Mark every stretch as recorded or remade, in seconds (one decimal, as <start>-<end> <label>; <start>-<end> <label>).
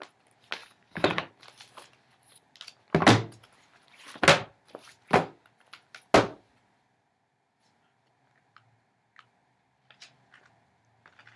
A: 0.0-0.6 recorded; 0.6-1.3 remade; 1.3-11.4 recorded